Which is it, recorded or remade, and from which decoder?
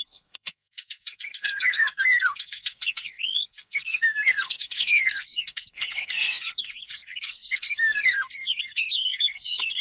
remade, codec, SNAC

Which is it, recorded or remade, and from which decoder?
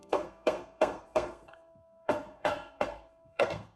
remade, codec, SNAC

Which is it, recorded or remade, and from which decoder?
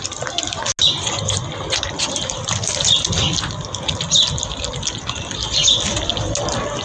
recorded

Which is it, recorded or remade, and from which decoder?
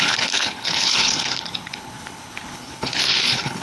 remade, codec, HILCodec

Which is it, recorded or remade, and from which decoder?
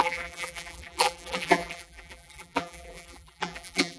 remade, vocoder, BigVGAN v2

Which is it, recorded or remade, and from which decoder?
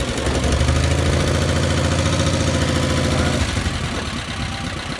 recorded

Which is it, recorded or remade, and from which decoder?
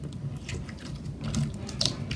recorded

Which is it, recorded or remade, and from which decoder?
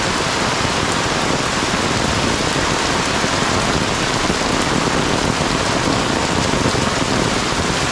recorded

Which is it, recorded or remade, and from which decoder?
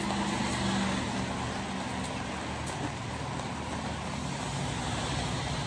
recorded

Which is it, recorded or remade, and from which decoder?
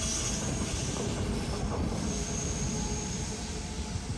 recorded